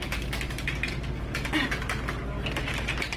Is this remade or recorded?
recorded